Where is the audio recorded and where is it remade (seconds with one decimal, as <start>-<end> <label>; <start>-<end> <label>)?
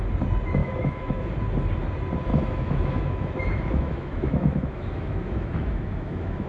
0.0-0.6 recorded; 0.6-1.3 remade; 1.3-2.3 recorded; 2.3-6.5 remade